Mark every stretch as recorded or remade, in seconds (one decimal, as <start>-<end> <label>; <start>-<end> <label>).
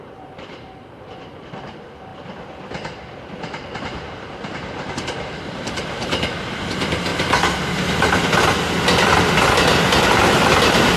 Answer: 0.0-2.1 remade; 2.1-3.6 recorded; 3.6-7.1 remade; 7.1-11.0 recorded